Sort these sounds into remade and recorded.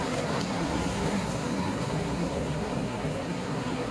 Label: remade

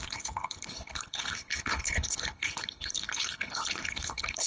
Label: remade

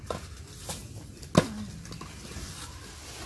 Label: recorded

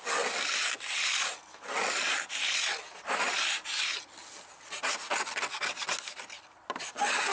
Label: recorded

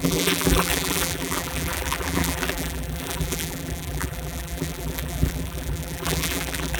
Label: remade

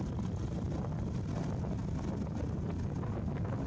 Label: recorded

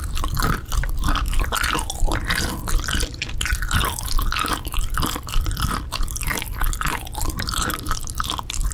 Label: recorded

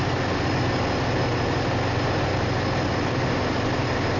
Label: recorded